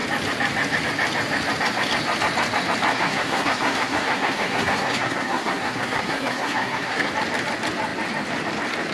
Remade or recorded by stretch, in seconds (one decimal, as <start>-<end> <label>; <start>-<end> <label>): 0.0-2.9 recorded; 2.9-7.1 remade; 7.1-8.9 recorded